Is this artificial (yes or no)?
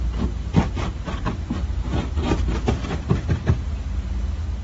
no